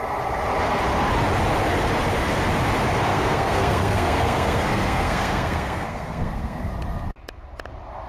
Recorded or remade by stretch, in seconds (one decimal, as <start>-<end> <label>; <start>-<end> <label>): 0.0-3.1 recorded; 3.1-6.7 remade; 6.7-8.1 recorded